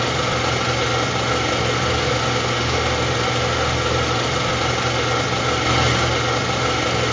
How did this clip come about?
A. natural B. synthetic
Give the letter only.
A